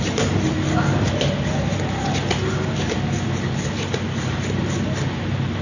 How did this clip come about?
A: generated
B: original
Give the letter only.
B